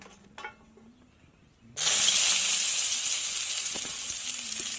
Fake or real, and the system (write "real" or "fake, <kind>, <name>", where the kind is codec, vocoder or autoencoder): real